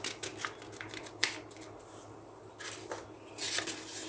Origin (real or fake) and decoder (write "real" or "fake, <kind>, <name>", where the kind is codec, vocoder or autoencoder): real